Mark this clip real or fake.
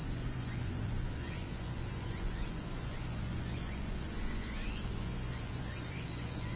fake